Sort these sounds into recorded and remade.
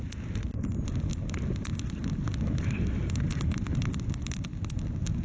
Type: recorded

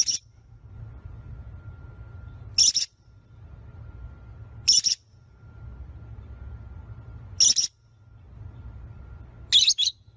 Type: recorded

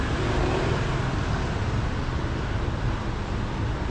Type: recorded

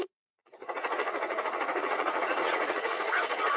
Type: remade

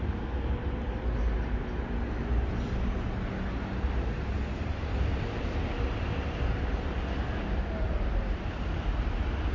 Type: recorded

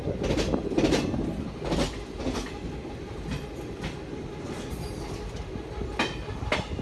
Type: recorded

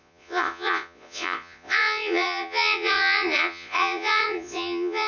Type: remade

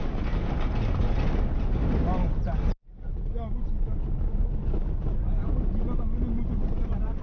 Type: recorded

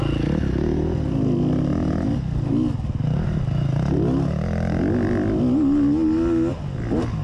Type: recorded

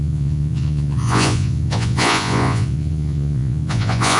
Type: remade